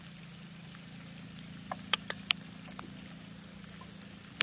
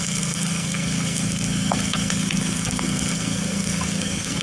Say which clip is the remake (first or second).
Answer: second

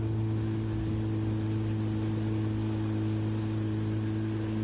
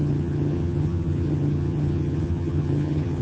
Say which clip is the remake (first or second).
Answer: second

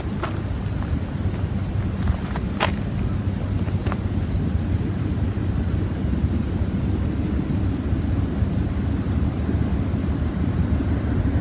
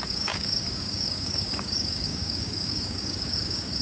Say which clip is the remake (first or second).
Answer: second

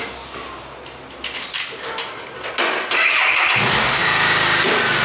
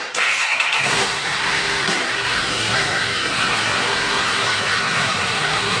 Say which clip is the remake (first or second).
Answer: second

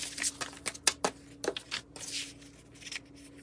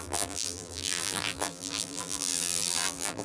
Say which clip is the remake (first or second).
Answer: second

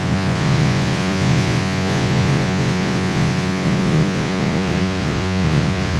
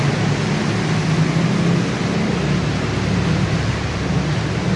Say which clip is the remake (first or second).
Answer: first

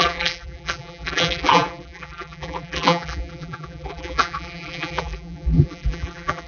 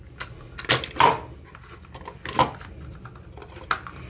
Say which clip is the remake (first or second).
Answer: first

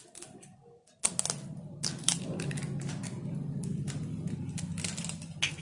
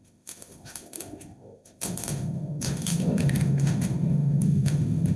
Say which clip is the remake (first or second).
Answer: second